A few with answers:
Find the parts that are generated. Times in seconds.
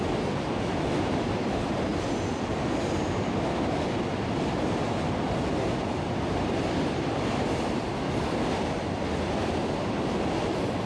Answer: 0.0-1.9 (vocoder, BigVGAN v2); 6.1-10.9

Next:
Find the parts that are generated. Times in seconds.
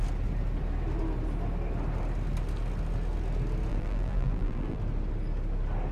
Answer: 3.7-4.8 (vocoder, BigVGAN v2)